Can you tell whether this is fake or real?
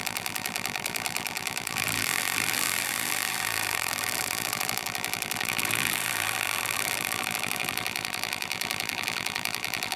fake